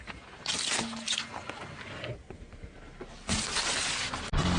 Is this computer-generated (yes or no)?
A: no